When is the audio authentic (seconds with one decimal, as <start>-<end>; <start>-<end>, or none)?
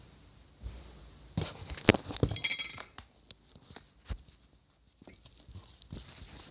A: 0.0-6.5